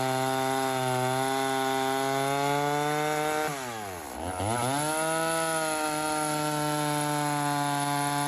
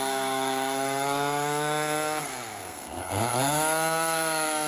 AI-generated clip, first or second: second